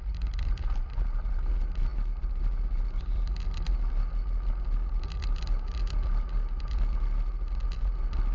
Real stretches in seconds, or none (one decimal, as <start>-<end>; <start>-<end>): 0.0-8.3